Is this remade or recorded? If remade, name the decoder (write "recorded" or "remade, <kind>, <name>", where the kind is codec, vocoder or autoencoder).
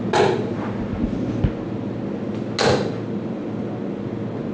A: recorded